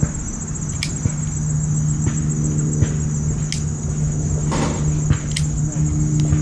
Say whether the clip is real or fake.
real